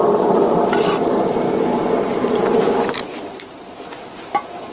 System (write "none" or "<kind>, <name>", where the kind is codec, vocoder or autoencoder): vocoder, BigVGAN v2